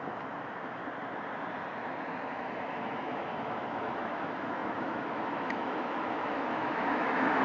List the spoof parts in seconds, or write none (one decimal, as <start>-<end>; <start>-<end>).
0.0-0.8; 2.3-7.4